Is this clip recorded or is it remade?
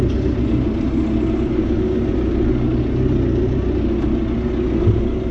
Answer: recorded